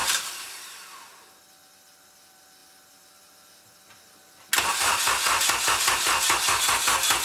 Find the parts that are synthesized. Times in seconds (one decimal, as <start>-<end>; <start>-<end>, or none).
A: 0.0-1.1